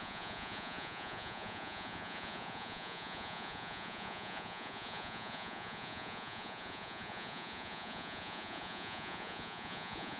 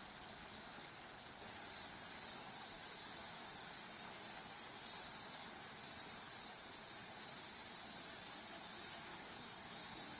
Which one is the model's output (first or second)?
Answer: first